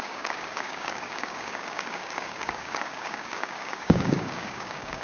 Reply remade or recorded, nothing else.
remade